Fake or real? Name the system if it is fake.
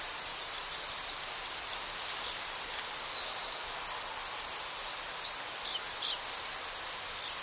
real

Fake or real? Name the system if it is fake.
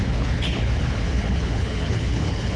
fake, codec, HILCodec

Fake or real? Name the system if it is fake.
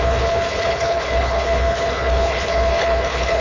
fake, codec, HILCodec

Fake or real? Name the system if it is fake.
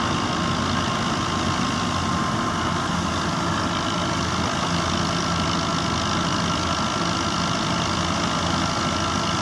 real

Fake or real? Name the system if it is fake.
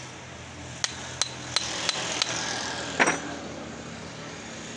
real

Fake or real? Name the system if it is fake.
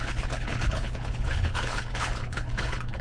fake, codec, HILCodec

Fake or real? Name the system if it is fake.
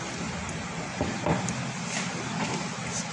real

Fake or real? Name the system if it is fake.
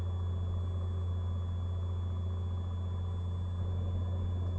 real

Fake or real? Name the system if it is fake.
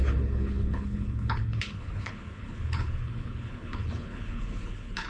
fake, codec, HILCodec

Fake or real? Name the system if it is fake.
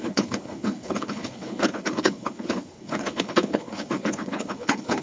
fake, codec, HILCodec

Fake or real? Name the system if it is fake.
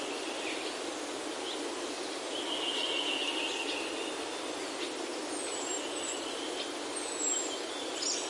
real